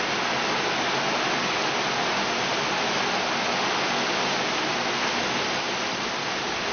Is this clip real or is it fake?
real